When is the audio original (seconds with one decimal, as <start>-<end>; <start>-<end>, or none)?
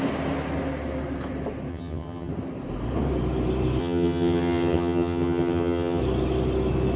0.0-1.7; 2.3-3.8; 6.0-7.0